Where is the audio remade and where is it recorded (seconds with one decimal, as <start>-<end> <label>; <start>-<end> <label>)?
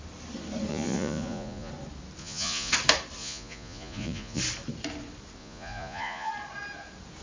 0.0-0.7 recorded; 0.7-1.7 remade; 1.7-2.2 recorded; 2.2-2.7 remade; 2.7-3.2 recorded; 3.2-4.4 remade; 4.4-5.4 recorded; 5.4-6.3 remade; 6.3-7.2 recorded